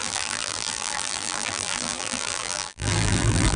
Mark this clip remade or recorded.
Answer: remade